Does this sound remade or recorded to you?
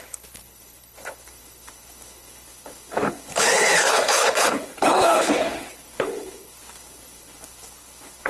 remade